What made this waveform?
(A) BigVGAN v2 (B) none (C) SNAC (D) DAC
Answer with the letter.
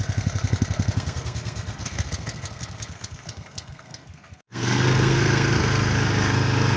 C